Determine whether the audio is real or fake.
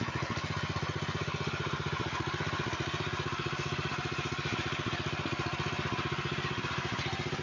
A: real